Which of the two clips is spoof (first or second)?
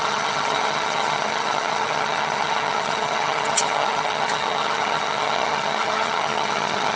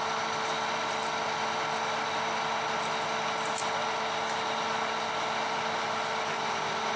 first